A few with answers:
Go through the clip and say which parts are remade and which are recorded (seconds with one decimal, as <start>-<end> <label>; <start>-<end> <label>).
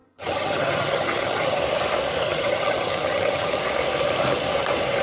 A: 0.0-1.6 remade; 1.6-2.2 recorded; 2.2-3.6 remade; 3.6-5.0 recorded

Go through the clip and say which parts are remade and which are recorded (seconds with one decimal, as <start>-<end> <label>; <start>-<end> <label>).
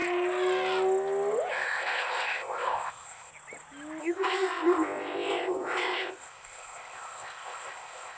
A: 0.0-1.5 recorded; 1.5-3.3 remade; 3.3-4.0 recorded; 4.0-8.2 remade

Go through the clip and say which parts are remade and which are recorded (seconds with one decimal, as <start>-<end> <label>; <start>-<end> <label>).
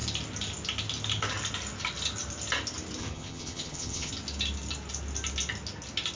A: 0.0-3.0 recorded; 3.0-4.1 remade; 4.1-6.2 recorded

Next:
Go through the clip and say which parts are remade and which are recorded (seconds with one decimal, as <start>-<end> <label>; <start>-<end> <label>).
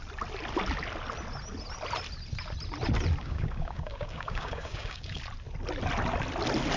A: 0.0-3.2 recorded; 3.2-5.2 remade; 5.2-6.8 recorded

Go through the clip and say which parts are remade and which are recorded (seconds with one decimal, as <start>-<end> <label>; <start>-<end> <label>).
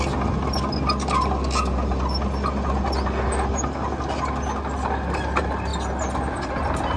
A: 0.0-7.0 recorded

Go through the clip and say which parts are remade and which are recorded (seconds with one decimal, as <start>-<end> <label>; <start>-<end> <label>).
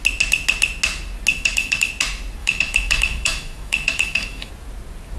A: 0.0-1.3 recorded; 1.3-1.9 remade; 1.9-2.4 recorded; 2.4-4.5 remade; 4.5-5.2 recorded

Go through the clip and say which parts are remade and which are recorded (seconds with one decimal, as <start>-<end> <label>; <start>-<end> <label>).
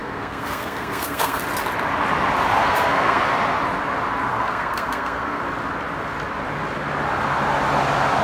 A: 0.0-1.4 remade; 1.4-2.6 recorded; 2.6-3.2 remade; 3.2-4.3 recorded; 4.3-5.4 remade; 5.4-8.2 recorded